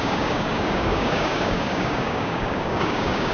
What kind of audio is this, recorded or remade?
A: remade